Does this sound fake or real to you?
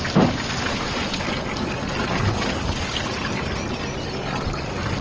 real